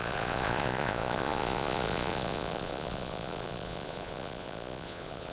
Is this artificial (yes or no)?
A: yes